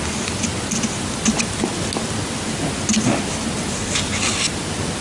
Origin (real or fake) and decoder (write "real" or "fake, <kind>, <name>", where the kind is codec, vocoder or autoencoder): real